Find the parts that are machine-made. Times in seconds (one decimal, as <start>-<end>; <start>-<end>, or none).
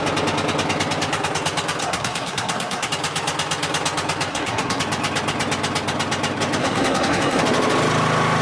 1.8-2.9; 4.3-4.8; 6.6-7.4